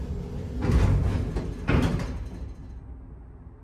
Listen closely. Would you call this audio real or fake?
real